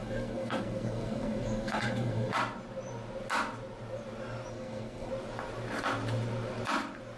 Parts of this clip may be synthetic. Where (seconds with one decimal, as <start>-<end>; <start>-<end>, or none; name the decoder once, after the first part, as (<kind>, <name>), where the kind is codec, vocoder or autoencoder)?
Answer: 0.0-2.3 (codec, SNAC); 4.5-5.1